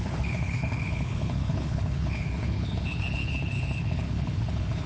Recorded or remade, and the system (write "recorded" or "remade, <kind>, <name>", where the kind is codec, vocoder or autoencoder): remade, codec, HILCodec